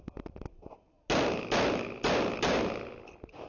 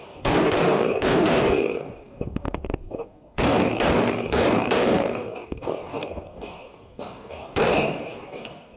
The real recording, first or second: first